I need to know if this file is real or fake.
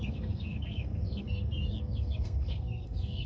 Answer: fake